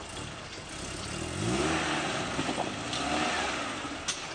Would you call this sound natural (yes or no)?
yes